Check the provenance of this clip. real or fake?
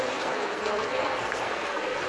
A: fake